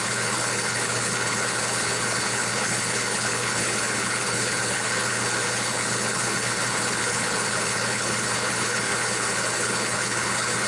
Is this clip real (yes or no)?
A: no